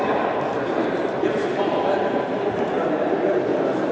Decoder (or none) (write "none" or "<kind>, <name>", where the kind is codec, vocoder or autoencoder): none